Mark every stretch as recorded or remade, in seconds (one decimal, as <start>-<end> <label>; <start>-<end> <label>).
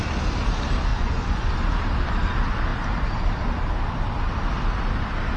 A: 0.0-0.9 recorded; 0.9-1.5 remade; 1.5-5.4 recorded